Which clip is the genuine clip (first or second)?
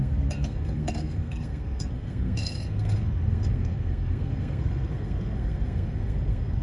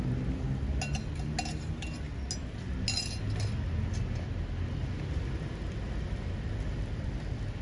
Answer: second